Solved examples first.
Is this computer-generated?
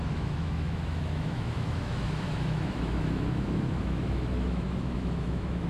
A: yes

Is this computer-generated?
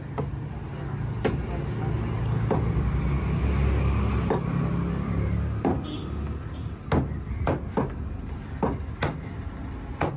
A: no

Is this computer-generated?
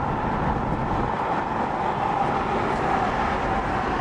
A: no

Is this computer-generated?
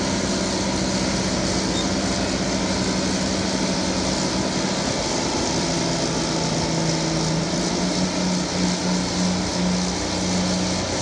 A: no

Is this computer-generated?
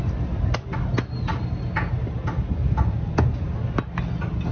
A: no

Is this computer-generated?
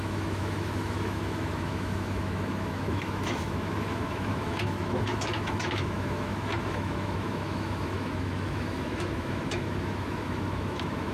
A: yes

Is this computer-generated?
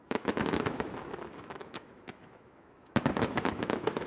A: yes